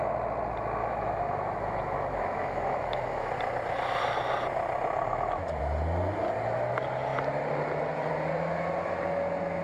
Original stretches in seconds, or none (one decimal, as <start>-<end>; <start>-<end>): 0.0-0.8; 3.3-5.1; 5.6-9.6